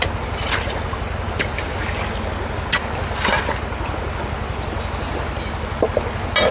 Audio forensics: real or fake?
real